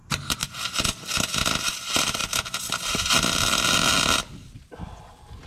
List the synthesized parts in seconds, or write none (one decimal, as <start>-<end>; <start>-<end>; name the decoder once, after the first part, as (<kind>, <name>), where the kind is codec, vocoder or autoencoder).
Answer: none